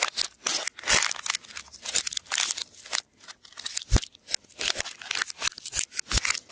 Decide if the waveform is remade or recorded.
recorded